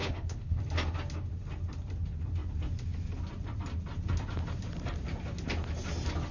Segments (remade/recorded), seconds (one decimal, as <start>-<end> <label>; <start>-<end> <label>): 0.0-0.6 remade; 0.6-6.3 recorded